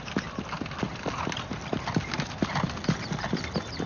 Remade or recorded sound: recorded